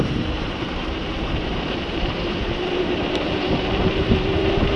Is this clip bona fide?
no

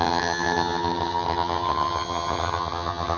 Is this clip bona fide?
no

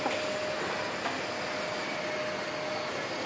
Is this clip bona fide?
yes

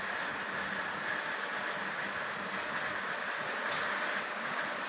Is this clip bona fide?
yes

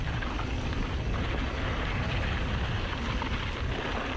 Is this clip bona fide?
yes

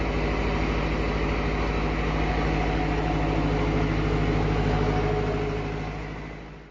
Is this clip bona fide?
yes